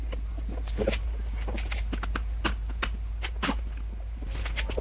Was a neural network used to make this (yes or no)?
no